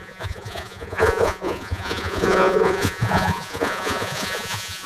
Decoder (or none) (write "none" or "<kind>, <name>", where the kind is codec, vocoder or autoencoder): vocoder, Vocos